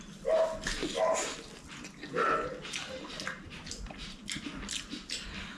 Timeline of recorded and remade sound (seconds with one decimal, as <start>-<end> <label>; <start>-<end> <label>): 0.0-5.6 recorded